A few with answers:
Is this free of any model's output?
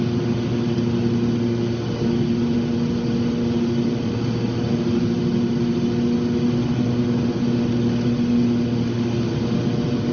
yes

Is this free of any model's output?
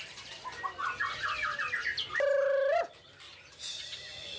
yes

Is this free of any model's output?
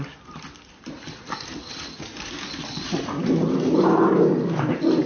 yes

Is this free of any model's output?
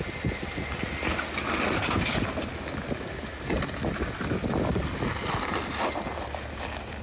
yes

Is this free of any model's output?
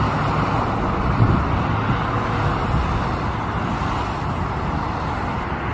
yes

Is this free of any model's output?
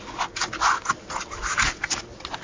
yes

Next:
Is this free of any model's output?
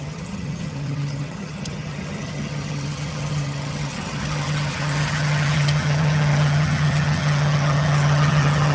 no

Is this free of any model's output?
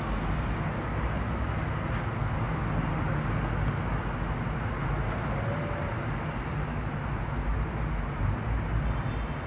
yes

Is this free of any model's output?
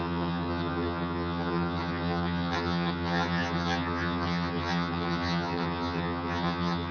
no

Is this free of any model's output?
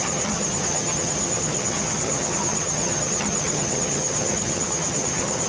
no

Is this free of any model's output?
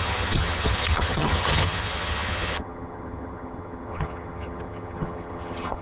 no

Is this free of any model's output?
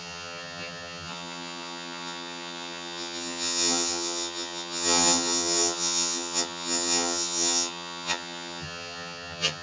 no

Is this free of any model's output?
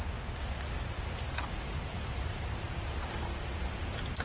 yes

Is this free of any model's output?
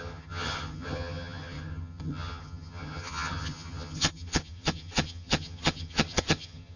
no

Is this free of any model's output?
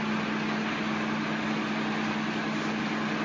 yes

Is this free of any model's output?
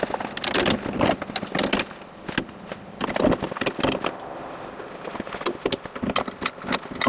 yes